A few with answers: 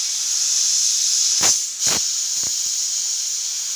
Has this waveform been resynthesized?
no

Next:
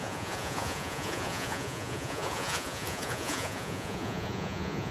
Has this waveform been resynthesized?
yes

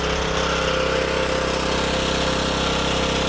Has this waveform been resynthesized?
no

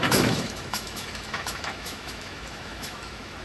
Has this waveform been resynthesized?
yes